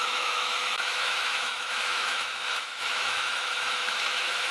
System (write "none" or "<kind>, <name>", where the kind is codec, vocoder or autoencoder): autoencoder, DAC-VAE